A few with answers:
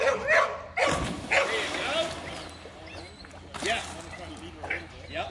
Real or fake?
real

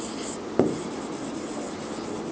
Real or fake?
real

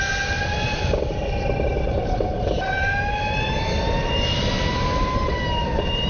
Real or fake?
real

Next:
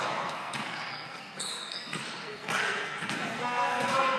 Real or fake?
fake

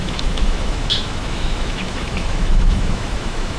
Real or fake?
fake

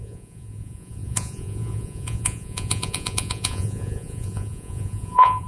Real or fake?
fake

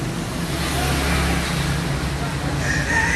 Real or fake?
real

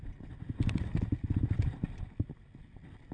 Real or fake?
real